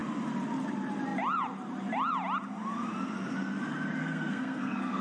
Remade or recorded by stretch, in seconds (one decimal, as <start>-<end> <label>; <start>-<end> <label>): 0.0-4.0 recorded; 4.0-5.0 remade